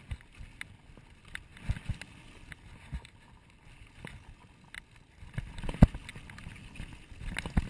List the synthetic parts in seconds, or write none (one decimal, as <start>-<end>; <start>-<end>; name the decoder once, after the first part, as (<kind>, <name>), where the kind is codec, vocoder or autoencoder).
none